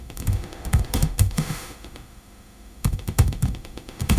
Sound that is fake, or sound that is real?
fake